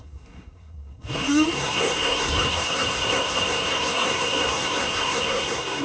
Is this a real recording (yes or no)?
no